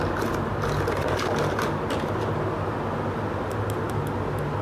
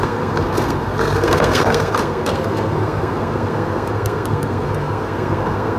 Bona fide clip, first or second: first